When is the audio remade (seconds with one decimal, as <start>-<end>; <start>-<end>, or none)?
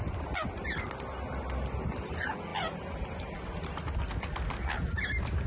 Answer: none